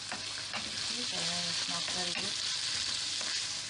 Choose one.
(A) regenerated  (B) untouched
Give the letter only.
B